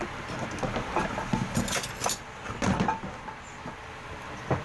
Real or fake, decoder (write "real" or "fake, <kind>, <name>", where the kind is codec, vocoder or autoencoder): real